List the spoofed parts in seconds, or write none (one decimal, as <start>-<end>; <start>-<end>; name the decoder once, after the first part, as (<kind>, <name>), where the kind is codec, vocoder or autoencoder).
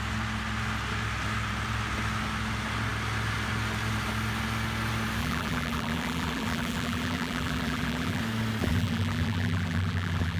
5.2-8.2 (vocoder, BigVGAN v2); 8.6-10.4